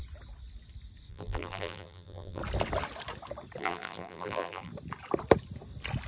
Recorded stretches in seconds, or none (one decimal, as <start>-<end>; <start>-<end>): 0.0-1.1; 2.4-3.6; 4.7-6.1